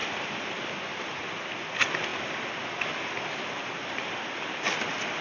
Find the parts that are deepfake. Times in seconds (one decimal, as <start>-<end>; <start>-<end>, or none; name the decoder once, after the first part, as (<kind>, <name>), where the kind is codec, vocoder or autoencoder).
none